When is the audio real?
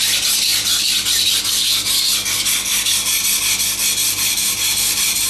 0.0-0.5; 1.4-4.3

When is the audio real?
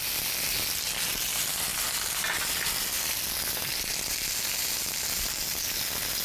0.0-6.2